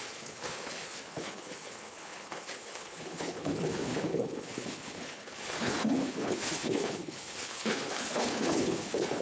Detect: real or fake fake